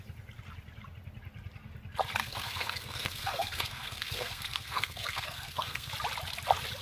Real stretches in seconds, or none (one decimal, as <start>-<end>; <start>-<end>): 0.0-2.2; 5.9-6.8